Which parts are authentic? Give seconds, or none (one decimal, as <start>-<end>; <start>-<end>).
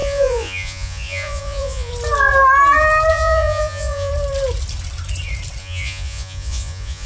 1.9-3.1; 4.1-5.6